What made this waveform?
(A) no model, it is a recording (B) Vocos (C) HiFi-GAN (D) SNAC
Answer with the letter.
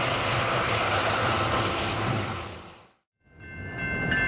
A